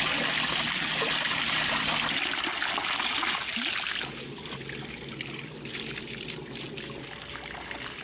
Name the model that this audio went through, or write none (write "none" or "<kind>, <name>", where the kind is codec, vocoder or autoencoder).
none